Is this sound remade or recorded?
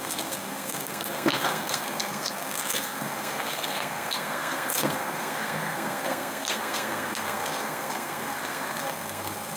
remade